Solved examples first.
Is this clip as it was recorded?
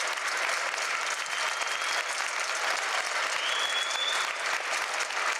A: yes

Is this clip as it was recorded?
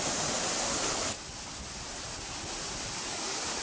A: yes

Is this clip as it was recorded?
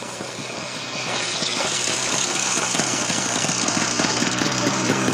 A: no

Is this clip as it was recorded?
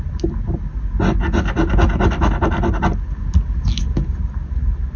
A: yes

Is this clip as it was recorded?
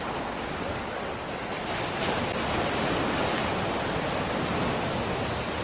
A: yes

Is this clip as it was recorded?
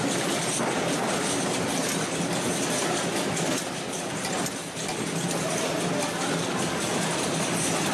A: yes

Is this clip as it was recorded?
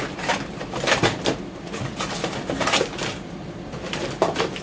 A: no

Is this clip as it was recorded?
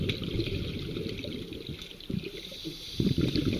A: yes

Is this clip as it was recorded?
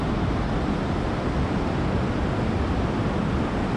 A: yes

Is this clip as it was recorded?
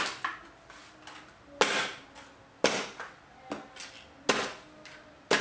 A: yes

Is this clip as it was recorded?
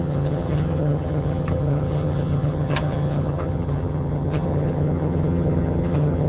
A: no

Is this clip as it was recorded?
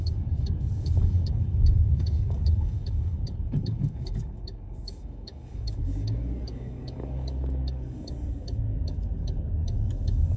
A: no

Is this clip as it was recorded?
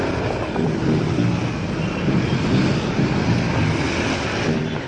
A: no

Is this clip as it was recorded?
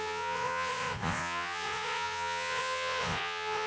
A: no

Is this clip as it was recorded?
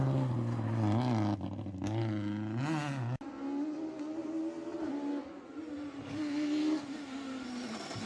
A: yes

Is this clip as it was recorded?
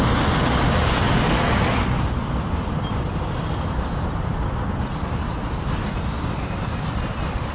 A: yes